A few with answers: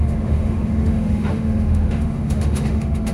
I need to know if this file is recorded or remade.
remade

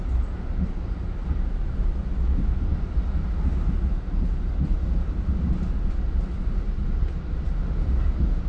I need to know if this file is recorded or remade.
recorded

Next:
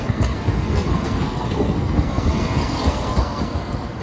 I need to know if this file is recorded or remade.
remade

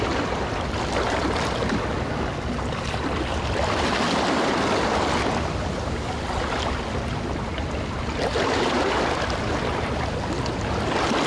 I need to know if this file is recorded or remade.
recorded